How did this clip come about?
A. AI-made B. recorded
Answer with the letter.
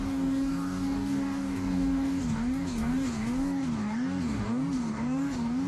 A